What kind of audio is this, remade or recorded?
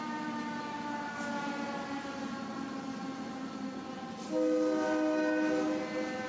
recorded